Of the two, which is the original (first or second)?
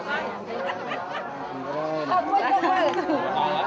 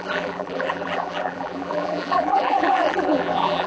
first